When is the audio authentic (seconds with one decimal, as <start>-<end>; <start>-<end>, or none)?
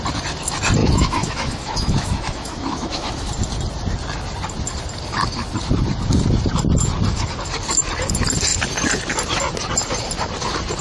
0.0-0.8; 3.3-10.8